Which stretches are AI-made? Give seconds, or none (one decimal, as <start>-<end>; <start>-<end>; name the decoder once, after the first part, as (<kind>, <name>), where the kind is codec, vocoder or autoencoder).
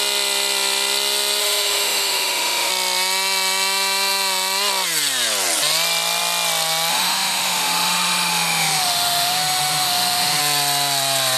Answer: 1.4-2.7 (autoencoder, DAC-VAE); 6.9-10.4